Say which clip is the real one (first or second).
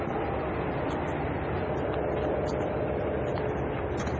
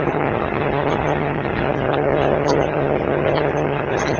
first